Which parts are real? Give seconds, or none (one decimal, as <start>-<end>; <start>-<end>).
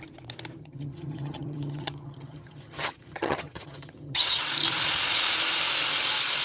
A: 0.0-0.6; 4.4-6.4